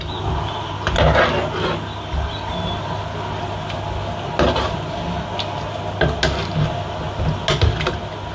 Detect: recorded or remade recorded